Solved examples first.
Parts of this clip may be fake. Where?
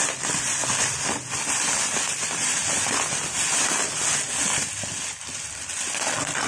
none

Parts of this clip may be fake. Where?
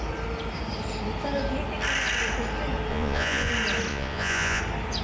2.9-3.5 (vocoder, Vocos); 3.9-4.6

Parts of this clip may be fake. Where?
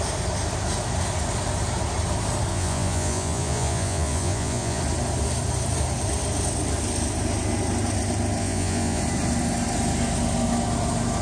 2.5-4.8 (vocoder, Vocos); 8.4-9.0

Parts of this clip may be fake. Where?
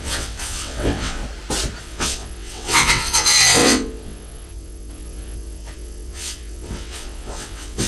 0.0-1.2 (vocoder, WaveNeXt); 1.8-7.9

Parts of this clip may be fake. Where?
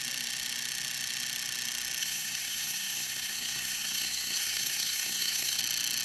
2.0-5.6 (codec, SNAC)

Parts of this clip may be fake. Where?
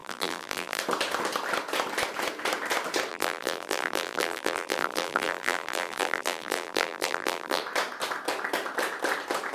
0.0-0.8 (vocoder, BigVGAN v2); 3.1-7.6